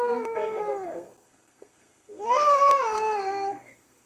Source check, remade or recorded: remade